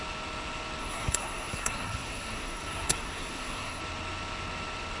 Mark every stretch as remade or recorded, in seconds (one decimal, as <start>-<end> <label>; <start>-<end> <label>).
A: 0.0-0.8 recorded; 0.8-3.8 remade; 3.8-5.0 recorded